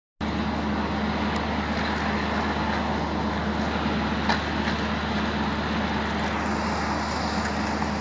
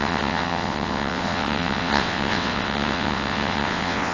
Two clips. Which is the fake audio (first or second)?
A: second